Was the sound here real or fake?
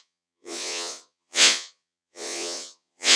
fake